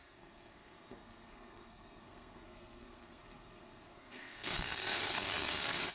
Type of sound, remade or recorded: remade